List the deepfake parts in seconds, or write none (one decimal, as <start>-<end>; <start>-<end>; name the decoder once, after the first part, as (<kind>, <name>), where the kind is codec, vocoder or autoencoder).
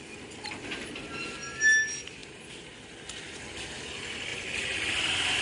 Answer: 4.3-5.4 (vocoder, BigVGAN v2)